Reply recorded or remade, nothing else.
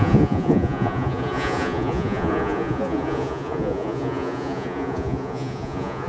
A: remade